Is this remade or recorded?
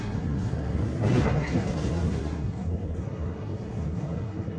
remade